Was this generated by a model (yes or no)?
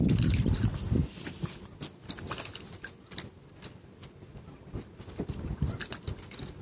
no